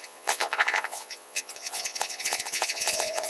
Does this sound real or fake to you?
fake